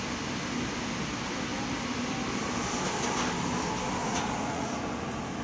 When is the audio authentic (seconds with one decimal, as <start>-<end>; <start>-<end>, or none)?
0.0-4.0; 4.7-5.4